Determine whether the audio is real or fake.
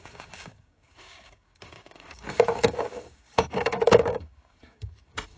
fake